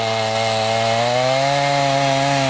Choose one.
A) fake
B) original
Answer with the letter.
B